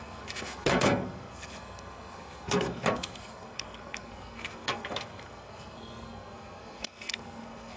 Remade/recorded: remade